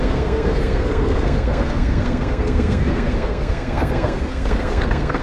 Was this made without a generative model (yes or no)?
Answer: no